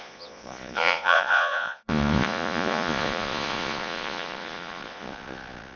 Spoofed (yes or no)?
yes